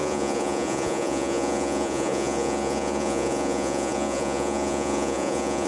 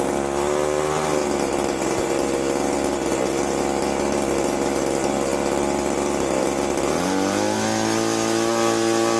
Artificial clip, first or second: first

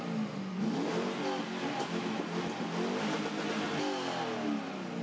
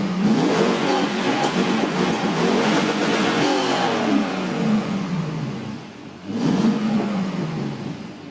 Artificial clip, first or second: second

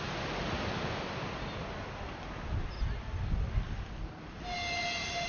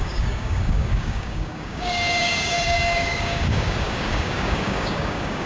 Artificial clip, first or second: second